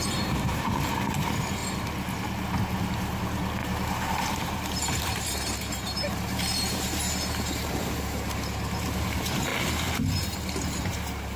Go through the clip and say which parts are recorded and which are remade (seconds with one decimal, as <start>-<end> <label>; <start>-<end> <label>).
0.0-1.6 remade; 1.6-2.9 recorded; 2.9-9.5 remade; 9.5-10.6 recorded; 10.6-11.4 remade